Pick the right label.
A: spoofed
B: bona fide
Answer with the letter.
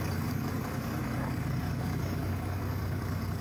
A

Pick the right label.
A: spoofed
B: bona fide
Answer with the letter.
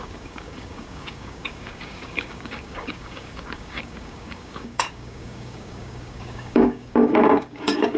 A